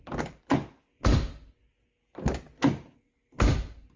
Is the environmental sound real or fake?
real